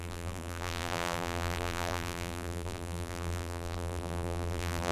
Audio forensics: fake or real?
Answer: fake